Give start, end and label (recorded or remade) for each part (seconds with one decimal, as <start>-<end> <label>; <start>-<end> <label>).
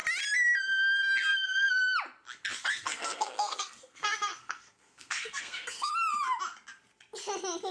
0.0-1.3 recorded; 1.3-1.8 remade; 1.8-2.7 recorded; 2.7-5.9 remade; 5.9-7.7 recorded